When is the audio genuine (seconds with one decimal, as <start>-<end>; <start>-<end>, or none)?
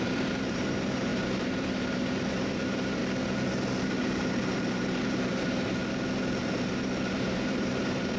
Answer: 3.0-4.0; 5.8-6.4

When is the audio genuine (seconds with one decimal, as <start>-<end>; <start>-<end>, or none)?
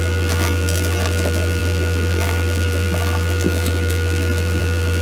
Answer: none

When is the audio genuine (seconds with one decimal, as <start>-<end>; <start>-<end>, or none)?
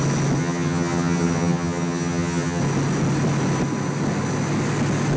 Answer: 0.0-0.4; 2.6-5.2